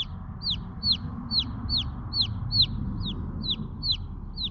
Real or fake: real